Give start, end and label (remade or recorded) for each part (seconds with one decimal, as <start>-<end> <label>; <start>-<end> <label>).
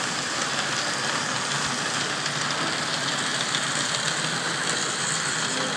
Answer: 0.0-5.8 recorded